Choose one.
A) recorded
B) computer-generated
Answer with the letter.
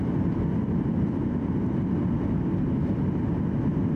A